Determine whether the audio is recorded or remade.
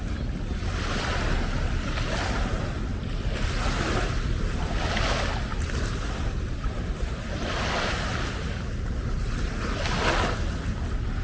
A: recorded